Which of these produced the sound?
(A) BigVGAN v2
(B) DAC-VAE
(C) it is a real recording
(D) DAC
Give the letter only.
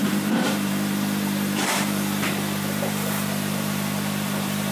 A